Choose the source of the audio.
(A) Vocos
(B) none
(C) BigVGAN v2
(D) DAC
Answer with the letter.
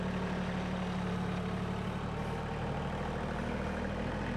B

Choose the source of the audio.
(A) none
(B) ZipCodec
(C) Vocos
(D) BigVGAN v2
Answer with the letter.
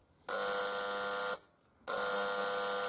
A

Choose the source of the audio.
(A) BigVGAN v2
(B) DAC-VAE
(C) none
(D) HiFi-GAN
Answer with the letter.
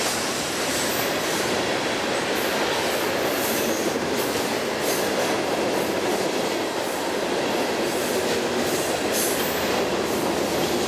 C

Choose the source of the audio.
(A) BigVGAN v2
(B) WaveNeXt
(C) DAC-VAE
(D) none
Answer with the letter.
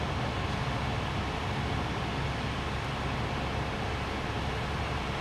D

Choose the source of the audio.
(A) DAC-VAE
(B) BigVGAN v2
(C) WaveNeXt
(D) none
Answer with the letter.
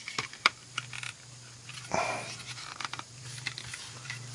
B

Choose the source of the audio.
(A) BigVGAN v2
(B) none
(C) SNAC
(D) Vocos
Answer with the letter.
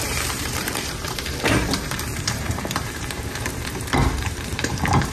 A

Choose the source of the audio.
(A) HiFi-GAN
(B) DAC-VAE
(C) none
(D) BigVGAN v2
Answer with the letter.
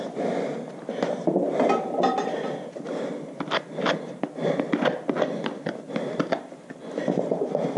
C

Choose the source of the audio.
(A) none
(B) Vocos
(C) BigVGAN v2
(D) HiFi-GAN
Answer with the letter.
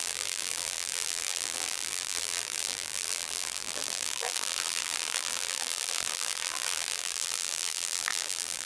C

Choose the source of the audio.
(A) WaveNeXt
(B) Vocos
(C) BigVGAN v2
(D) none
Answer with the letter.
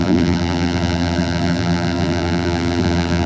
C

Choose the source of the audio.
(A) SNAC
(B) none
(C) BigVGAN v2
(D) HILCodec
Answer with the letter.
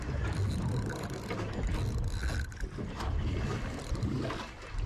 B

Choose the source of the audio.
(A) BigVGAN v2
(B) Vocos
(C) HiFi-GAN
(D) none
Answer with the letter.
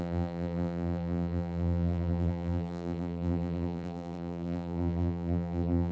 A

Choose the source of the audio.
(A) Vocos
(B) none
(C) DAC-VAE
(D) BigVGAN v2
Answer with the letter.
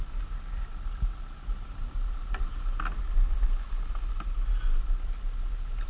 B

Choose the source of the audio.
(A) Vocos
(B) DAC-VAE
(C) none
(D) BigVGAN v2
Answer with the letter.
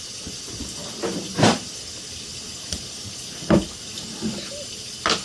C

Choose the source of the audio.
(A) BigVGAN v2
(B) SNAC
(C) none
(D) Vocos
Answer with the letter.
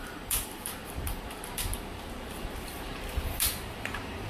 A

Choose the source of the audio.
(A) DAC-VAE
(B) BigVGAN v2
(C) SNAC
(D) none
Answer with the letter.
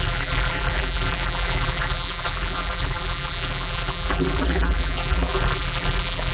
B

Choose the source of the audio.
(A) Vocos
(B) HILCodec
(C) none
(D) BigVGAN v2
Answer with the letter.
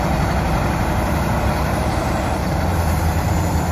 D